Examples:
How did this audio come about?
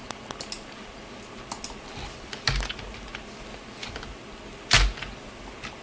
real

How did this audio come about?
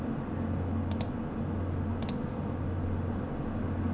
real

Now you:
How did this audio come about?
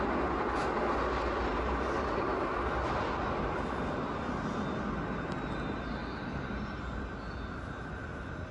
real